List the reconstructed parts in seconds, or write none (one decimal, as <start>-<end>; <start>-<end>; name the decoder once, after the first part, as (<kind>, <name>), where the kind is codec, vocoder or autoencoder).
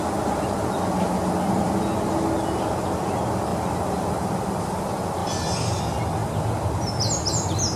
5.2-5.8 (vocoder, BigVGAN v2)